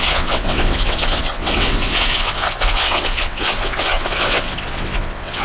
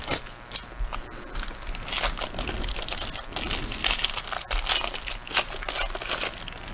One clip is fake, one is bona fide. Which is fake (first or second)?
first